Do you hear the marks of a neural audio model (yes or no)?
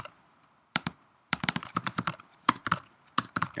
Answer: yes